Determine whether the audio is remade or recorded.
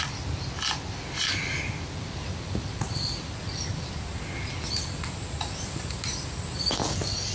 recorded